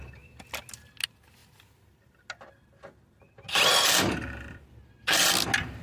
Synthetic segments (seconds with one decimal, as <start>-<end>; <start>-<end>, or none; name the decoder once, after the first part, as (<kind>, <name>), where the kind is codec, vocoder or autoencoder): none